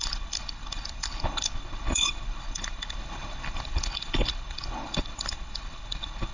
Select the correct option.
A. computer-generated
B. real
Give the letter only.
A